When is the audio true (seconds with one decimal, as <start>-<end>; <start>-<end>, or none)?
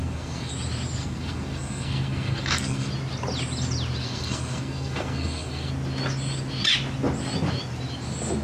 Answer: 0.5-1.0; 2.9-4.0; 5.7-8.4